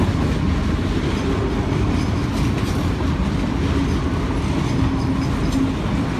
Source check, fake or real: real